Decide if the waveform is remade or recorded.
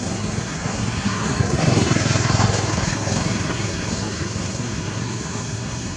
remade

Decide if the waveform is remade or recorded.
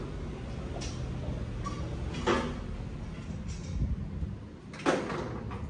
recorded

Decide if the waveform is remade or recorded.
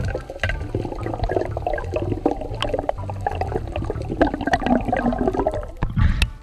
recorded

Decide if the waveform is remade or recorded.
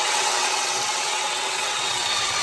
remade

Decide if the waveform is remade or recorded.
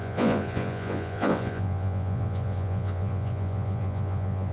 remade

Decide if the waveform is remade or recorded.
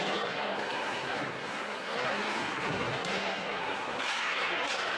remade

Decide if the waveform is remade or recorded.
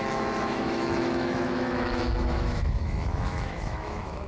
remade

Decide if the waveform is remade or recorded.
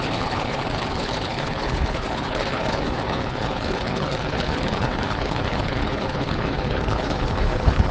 remade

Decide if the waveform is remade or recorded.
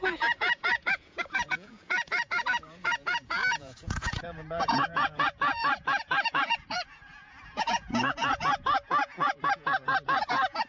remade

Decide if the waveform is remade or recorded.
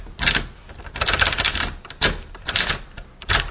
recorded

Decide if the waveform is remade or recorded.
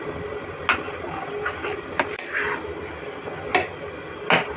recorded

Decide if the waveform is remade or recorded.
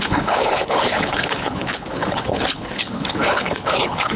remade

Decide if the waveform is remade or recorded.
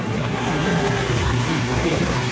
remade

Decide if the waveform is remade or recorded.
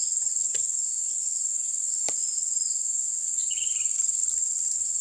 remade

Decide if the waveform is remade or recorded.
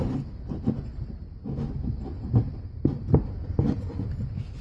recorded